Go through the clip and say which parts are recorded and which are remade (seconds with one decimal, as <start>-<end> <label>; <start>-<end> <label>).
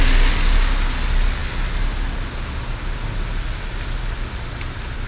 0.0-5.1 recorded